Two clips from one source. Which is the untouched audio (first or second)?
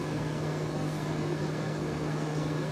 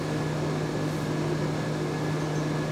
second